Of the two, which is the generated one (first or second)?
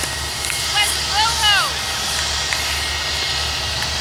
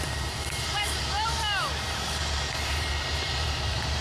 second